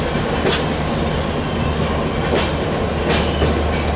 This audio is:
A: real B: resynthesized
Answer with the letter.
A